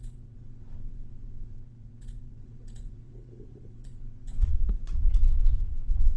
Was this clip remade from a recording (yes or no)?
yes